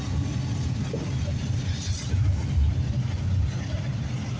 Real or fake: real